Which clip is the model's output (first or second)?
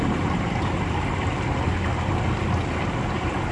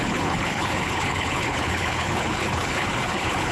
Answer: second